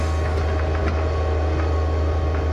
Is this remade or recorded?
recorded